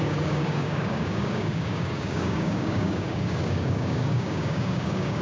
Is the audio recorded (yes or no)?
no